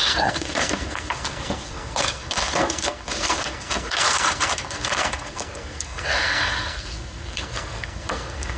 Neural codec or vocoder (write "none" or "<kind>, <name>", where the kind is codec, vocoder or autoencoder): codec, SNAC